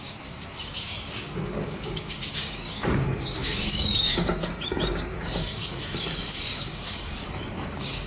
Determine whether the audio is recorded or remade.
remade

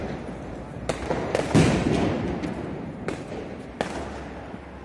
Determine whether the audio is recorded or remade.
recorded